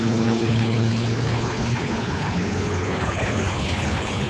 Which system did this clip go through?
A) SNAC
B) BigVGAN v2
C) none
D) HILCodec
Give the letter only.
D